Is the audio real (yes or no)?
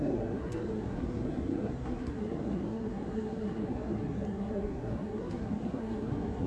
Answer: no